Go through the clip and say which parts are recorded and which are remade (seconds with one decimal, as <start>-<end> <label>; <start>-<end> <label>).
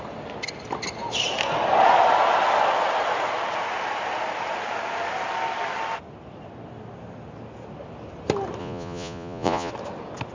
0.0-8.6 recorded; 8.6-9.7 remade; 9.7-10.3 recorded